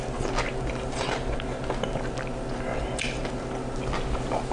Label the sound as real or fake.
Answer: real